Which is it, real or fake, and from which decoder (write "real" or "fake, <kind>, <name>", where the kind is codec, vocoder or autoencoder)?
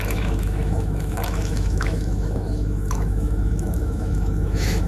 fake, autoencoder, DAC-VAE